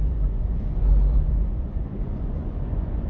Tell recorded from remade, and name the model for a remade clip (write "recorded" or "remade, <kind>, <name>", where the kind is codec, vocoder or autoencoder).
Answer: remade, vocoder, Vocos